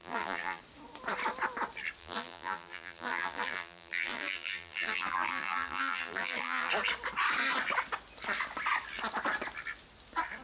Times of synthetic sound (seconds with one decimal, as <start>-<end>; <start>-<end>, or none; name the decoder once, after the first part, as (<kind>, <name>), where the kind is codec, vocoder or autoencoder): 0.0-0.6 (vocoder, BigVGAN v2); 2.0-6.7